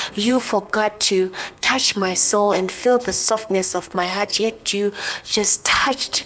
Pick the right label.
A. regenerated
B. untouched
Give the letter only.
A